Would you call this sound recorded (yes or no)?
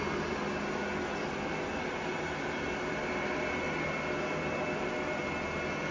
yes